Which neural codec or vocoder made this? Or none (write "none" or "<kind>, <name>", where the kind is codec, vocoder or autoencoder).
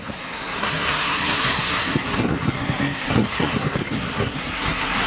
codec, SNAC